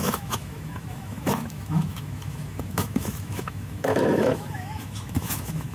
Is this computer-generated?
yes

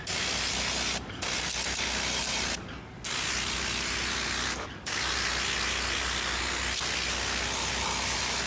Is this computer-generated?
no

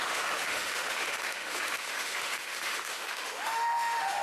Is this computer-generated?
yes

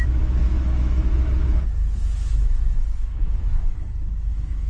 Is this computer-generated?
yes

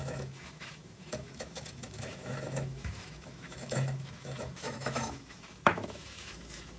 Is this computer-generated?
yes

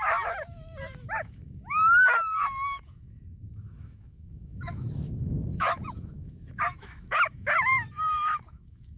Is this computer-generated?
yes